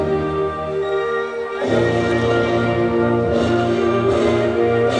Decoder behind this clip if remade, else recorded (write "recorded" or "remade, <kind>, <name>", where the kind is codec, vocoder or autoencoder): recorded